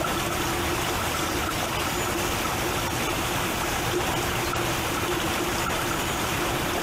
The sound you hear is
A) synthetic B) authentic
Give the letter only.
B